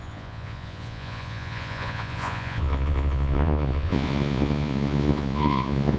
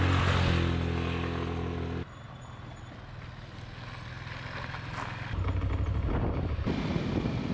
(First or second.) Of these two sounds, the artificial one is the first